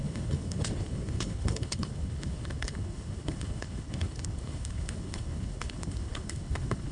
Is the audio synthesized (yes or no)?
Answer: yes